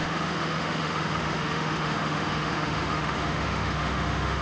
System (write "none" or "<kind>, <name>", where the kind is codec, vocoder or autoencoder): autoencoder, DAC-VAE